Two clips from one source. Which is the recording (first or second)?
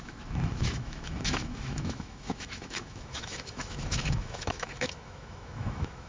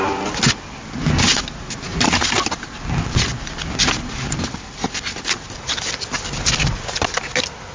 second